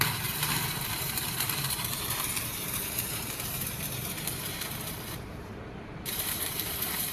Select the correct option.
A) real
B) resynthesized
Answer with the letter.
B